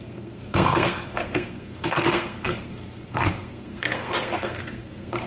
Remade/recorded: remade